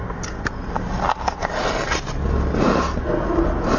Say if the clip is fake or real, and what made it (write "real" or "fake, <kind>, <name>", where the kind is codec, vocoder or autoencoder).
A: real